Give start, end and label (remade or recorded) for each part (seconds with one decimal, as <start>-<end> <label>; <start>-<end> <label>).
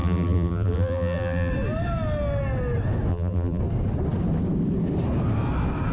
0.0-1.5 remade; 1.5-3.1 recorded; 3.1-3.6 remade; 3.6-5.9 recorded